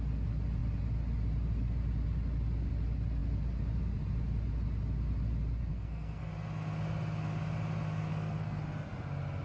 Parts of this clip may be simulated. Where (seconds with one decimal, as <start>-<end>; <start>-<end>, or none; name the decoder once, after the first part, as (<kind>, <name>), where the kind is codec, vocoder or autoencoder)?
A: 5.7-6.3 (codec, SNAC); 8.1-8.6